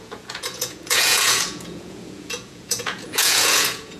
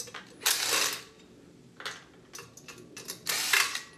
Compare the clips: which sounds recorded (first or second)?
second